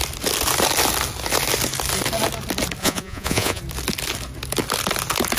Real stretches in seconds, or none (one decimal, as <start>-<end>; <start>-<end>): 0.0-2.8; 3.6-5.4